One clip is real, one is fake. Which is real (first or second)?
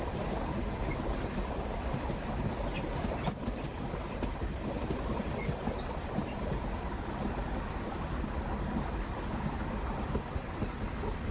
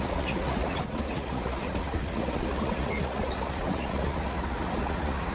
first